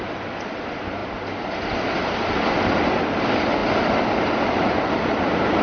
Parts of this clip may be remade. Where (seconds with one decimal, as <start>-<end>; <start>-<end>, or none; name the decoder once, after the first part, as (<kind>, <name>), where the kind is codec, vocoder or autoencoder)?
none